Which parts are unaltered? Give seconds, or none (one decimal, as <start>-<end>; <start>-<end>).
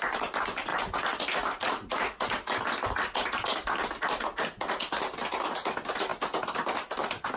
0.0-7.4